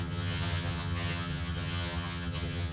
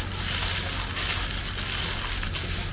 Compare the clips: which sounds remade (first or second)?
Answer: first